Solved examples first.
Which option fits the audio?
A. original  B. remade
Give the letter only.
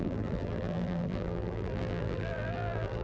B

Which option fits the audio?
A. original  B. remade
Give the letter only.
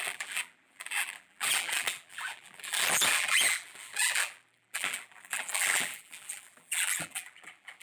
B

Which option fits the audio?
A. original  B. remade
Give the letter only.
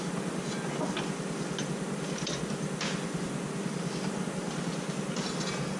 A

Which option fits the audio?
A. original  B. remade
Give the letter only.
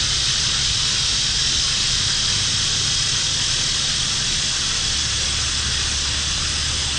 A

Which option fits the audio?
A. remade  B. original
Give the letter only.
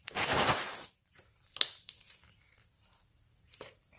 A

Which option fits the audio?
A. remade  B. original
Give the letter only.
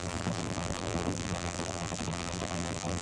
A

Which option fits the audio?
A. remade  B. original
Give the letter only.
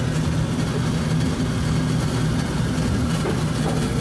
B